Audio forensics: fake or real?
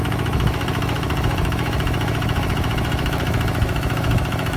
fake